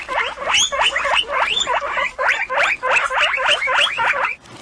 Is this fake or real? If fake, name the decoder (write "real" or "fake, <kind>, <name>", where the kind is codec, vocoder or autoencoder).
real